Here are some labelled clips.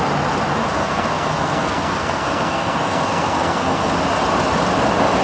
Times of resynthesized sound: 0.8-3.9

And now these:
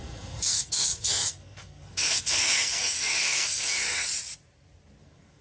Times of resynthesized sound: 0.0-4.1; 5.0-5.4

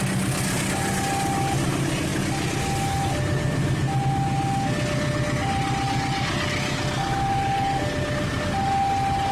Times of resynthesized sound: none

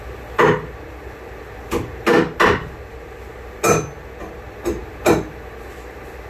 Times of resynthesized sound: none

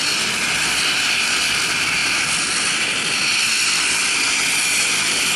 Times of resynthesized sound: none